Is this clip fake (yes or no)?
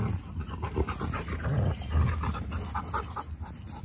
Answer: no